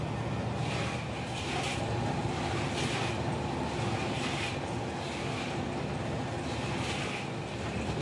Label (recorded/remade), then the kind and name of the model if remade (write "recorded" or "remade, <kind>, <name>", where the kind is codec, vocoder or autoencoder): recorded